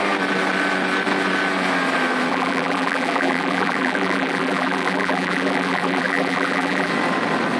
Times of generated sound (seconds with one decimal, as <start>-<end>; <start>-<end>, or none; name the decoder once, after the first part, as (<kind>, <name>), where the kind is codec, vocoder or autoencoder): 2.3-6.9 (vocoder, BigVGAN v2)